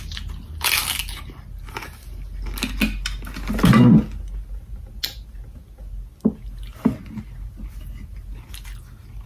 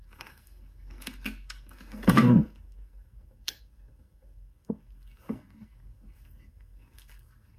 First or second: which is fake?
second